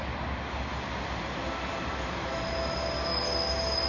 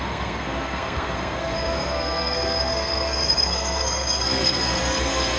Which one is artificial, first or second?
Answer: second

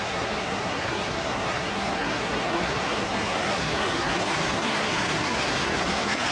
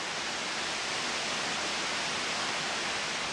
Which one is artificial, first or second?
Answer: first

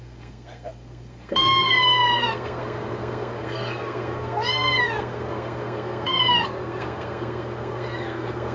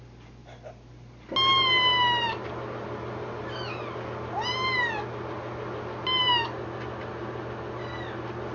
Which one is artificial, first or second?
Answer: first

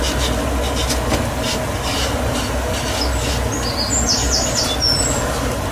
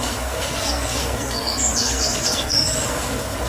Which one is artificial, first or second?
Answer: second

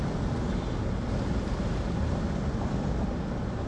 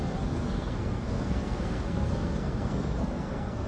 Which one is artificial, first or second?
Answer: second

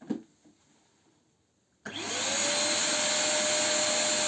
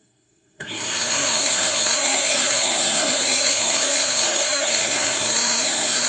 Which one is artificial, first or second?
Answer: second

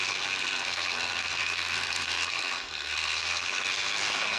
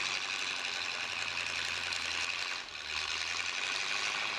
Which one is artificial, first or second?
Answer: first